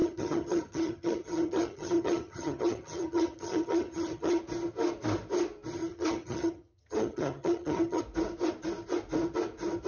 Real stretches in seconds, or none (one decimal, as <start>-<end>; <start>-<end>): 4.4-5.8; 8.0-9.9